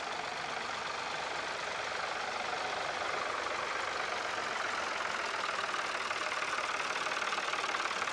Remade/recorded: recorded